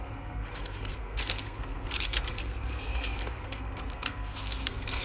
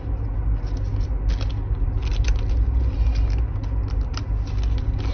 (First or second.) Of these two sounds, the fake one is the first